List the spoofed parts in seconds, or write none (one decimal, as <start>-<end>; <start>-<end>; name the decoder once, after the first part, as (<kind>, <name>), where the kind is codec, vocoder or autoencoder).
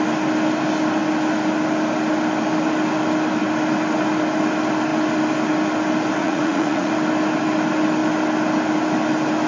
6.2-6.9 (vocoder, Vocos)